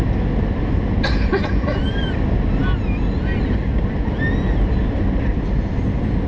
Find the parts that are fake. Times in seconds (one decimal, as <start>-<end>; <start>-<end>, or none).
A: 1.3-1.8